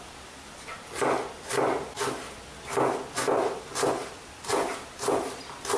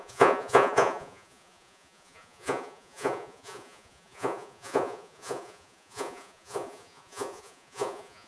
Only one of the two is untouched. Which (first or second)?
first